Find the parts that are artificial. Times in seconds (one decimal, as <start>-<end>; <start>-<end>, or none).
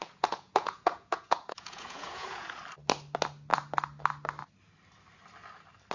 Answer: 0.0-2.6